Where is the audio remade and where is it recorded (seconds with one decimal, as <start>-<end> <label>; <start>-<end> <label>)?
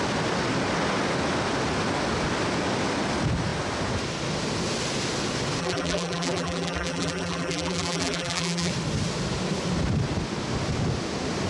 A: 0.0-5.6 recorded; 5.6-8.7 remade; 8.7-11.5 recorded